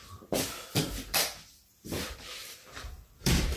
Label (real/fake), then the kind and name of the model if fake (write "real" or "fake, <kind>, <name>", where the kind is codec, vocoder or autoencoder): fake, vocoder, BigVGAN v2